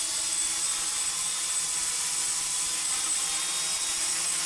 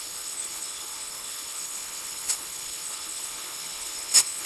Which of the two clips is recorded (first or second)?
first